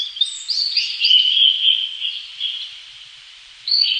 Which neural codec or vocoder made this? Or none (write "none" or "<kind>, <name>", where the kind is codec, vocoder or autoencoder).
none